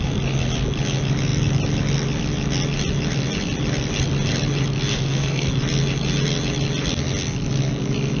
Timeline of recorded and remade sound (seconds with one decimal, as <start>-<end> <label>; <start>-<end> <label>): 0.0-4.9 recorded; 4.9-5.5 remade; 5.5-8.2 recorded